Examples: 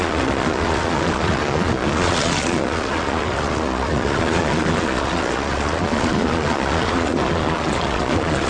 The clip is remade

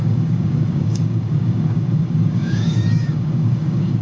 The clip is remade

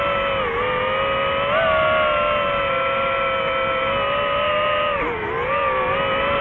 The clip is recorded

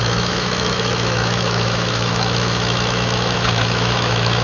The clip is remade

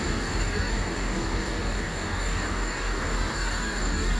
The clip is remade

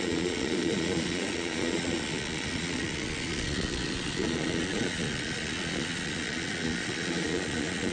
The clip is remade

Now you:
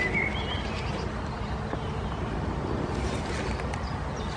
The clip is recorded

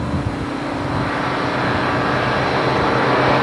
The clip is recorded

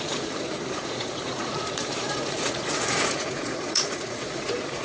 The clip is remade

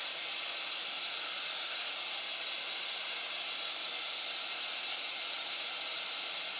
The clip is recorded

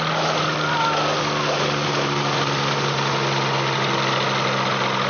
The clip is recorded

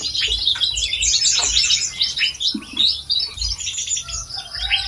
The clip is recorded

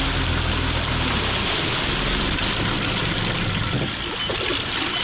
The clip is recorded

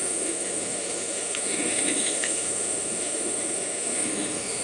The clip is remade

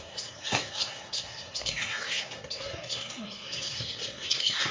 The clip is remade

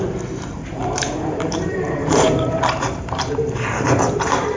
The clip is remade